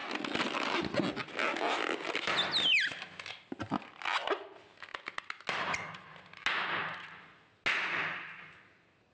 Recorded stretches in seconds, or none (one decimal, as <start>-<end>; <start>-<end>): 0.0-9.1